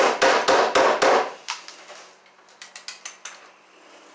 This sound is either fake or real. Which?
real